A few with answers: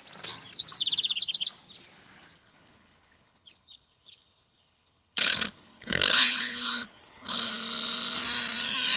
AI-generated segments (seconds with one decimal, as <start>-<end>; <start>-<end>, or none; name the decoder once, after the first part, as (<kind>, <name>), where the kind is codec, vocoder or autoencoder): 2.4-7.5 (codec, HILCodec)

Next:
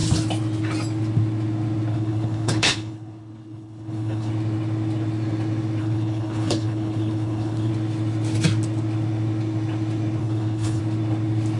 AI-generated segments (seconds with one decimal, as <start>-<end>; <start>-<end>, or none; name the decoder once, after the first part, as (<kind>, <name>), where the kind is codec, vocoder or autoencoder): 1.9-4.3 (codec, HILCodec); 5.8-7.7; 10.2-10.8

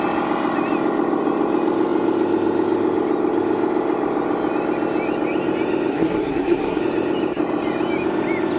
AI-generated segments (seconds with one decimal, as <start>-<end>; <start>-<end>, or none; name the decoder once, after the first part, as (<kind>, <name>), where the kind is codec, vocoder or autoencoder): 5.9-6.8 (codec, SNAC)

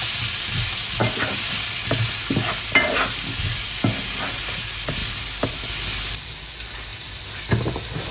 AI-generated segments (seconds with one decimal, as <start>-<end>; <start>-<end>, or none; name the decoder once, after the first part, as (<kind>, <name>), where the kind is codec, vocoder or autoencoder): none

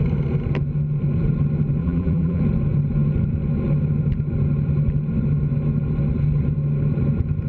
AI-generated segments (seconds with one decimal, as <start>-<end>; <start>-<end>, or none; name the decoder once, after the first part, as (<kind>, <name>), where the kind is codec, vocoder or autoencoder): 1.8-2.4 (vocoder, BigVGAN v2)

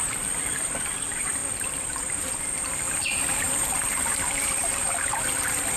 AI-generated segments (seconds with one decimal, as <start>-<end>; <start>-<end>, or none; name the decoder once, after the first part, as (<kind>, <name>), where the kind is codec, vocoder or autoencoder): 0.0-5.8 (vocoder, BigVGAN v2)

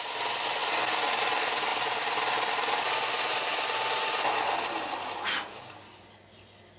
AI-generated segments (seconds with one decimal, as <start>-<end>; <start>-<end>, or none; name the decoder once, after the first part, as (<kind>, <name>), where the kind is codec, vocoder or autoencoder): none

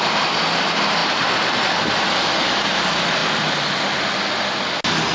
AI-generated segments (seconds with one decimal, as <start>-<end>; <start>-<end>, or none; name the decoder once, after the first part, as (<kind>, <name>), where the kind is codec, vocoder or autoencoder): none